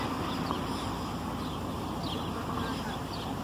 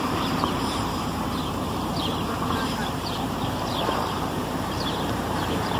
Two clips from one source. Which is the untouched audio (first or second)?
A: first